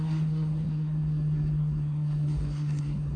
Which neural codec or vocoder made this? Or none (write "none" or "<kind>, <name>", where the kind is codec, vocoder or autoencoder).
codec, SNAC